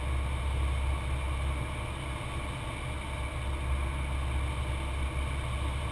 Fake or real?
real